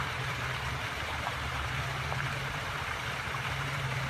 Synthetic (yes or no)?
yes